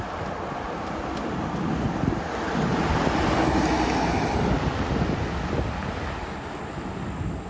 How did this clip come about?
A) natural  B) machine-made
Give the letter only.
A